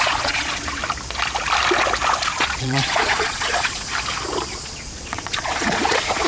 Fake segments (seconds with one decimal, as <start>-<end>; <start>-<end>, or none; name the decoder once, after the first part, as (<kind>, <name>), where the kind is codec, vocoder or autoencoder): 0.0-0.8 (vocoder, Vocos); 2.1-3.9; 4.6-6.3